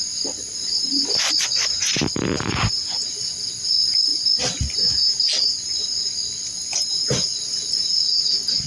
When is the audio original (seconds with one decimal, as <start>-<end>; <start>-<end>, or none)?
0.0-0.5; 2.7-7.0; 8.2-8.7